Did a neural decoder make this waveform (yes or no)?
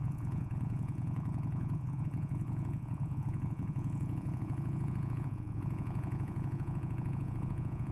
yes